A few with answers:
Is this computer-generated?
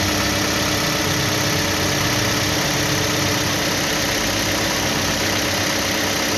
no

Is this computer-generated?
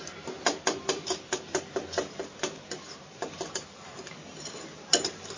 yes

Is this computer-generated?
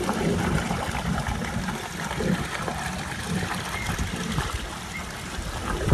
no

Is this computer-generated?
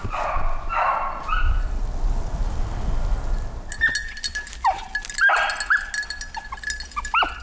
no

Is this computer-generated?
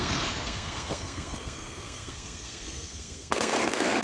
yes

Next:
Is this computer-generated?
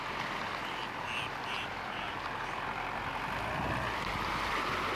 no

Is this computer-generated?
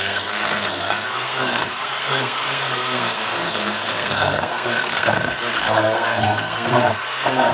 yes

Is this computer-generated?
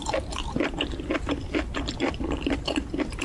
yes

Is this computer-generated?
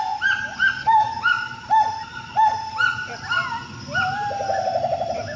no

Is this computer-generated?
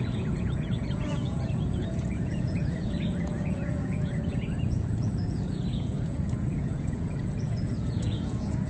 yes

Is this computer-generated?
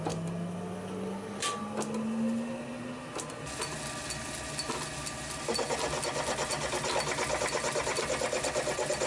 no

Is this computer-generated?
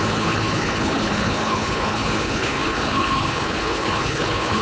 yes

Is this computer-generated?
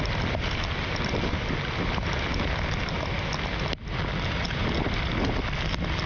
no